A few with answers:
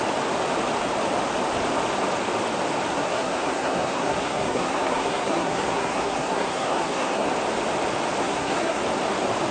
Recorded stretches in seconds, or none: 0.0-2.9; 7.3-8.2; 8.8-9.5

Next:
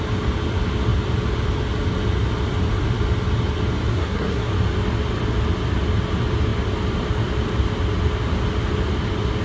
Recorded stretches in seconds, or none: 0.0-3.9; 4.5-9.4

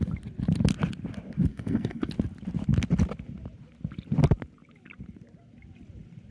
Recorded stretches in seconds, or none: 0.0-1.5; 2.1-6.3